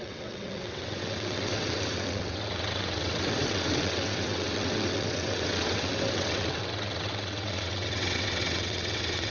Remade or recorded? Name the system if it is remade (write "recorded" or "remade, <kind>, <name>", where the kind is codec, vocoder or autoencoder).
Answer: remade, vocoder, WaveNeXt